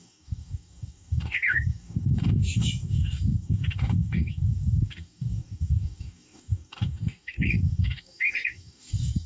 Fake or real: fake